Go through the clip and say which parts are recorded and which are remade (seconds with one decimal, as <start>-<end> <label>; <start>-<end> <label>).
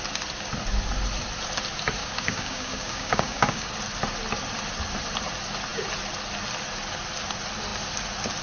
0.0-2.0 recorded; 2.0-3.7 remade; 3.7-8.4 recorded